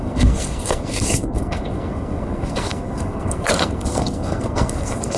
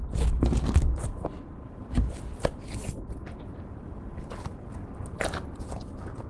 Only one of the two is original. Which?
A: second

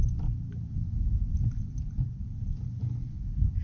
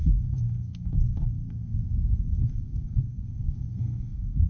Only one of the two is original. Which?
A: first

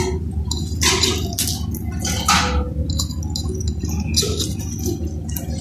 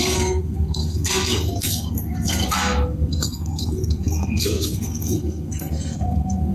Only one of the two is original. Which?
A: first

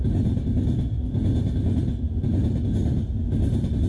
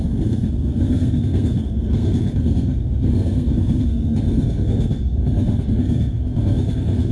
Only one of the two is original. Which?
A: first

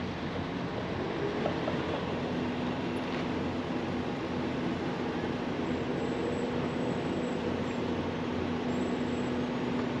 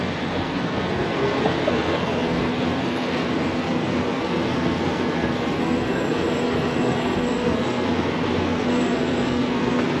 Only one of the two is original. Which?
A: first